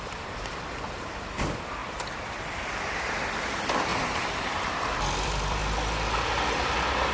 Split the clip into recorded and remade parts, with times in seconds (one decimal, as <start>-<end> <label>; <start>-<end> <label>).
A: 0.0-3.9 remade; 3.9-4.4 recorded; 4.4-5.6 remade; 5.6-7.1 recorded

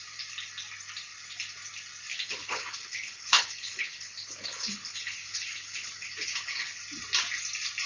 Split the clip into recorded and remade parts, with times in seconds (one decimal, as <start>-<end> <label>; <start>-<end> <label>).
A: 0.0-2.1 recorded; 2.1-6.8 remade; 6.8-7.9 recorded

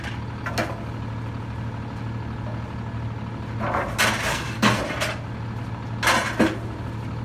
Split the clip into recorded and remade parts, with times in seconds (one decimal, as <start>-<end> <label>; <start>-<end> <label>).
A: 0.0-4.3 recorded; 4.3-4.8 remade; 4.8-7.2 recorded

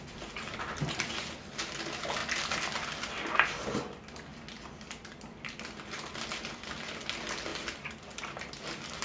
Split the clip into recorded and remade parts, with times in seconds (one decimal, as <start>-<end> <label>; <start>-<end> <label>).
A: 0.0-9.0 recorded